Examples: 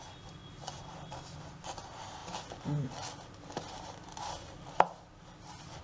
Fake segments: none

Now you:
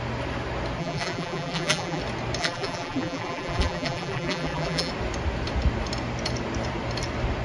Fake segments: 0.8-2.0 (vocoder, BigVGAN v2); 2.4-4.9

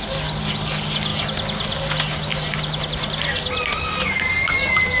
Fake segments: none

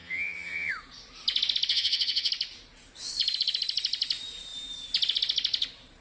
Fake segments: 0.0-0.7 (vocoder, HiFi-GAN); 1.7-2.3

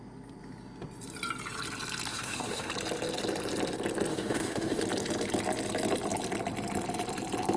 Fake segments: 2.1-2.7 (autoencoder, DAC-VAE); 4.1-4.8

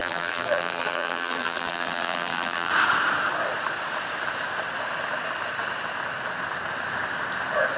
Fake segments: 0.0-2.7 (vocoder, BigVGAN v2)